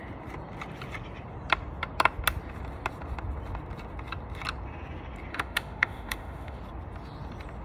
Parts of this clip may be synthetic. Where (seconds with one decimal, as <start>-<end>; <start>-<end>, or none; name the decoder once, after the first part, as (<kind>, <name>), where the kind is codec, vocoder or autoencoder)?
5.3-6.6 (autoencoder, DAC-VAE)